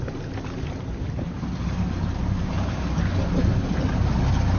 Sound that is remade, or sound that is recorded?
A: recorded